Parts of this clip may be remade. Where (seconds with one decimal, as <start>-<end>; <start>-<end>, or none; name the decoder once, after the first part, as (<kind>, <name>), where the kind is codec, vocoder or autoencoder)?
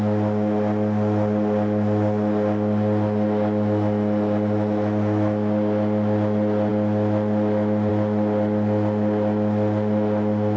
none